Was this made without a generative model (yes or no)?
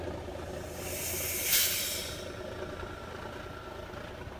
yes